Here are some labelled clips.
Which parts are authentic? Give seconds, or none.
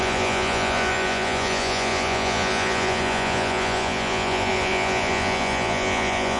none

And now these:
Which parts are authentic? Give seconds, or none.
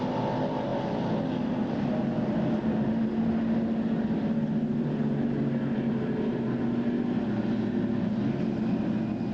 0.0-9.3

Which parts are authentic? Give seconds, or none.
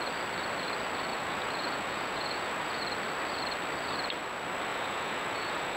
0.0-1.1; 2.8-4.7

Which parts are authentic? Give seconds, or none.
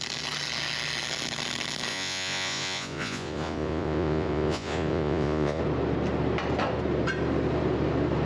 0.0-1.9; 5.6-8.2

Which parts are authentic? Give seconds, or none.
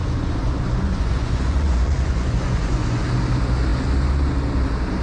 3.0-5.0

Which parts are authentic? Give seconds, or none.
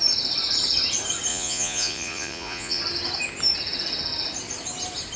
0.0-1.3; 2.8-5.2